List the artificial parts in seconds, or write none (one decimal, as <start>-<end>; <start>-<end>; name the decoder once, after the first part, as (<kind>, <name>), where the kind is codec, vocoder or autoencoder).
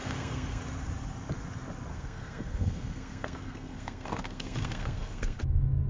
0.0-0.6 (codec, SNAC); 1.9-5.4